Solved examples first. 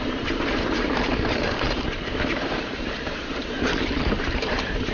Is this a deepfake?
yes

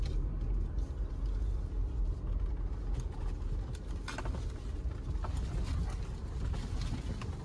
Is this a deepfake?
no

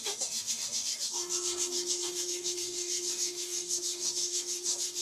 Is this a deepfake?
yes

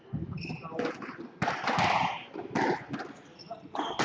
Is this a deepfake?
no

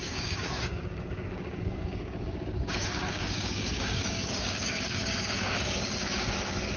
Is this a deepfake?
yes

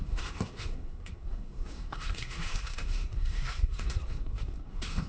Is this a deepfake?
yes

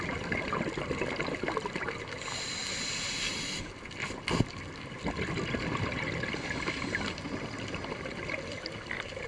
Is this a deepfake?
no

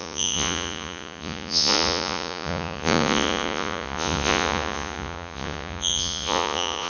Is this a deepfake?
yes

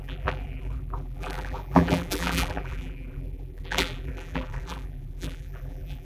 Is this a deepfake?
yes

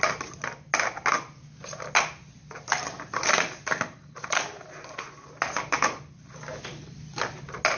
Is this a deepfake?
no